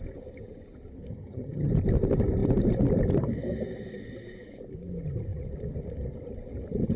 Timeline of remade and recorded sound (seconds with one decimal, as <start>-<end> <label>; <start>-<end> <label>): 0.0-1.1 recorded; 1.1-1.7 remade; 1.7-7.0 recorded